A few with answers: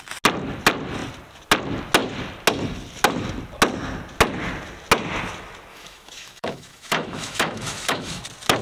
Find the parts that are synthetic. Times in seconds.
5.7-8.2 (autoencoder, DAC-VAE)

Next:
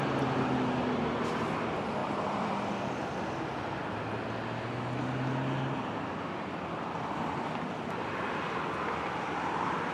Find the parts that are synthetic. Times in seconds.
2.0-3.3 (vocoder, BigVGAN v2)

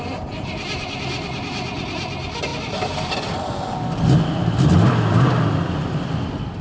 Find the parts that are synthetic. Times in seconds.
none

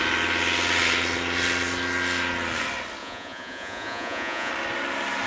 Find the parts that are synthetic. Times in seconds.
3.0-4.5 (vocoder, Vocos)

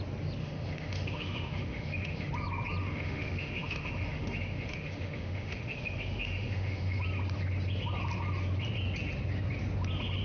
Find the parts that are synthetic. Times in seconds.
0.4-2.3 (autoencoder, DAC-VAE); 2.8-7.0

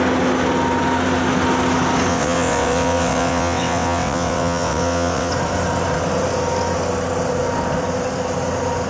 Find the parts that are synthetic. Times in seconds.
2.1-5.3 (vocoder, WaveNeXt)